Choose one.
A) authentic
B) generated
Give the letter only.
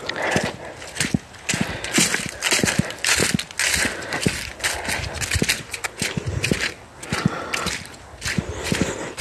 A